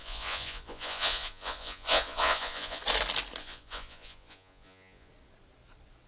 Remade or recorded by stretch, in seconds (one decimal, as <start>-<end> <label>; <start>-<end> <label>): 0.0-2.8 remade; 2.8-3.4 recorded; 3.4-5.1 remade; 5.1-6.1 recorded